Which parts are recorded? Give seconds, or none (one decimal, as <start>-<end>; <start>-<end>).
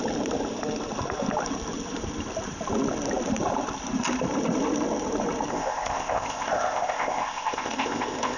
0.0-5.5